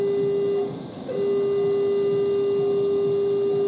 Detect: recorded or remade recorded